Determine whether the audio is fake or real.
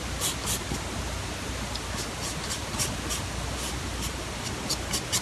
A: real